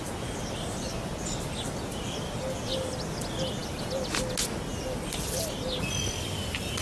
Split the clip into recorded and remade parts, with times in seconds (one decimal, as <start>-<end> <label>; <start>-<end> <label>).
0.0-3.6 recorded; 3.6-4.2 remade; 4.2-4.7 recorded; 4.7-6.8 remade